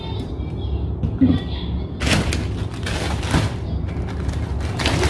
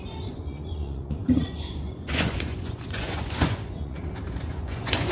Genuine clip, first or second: first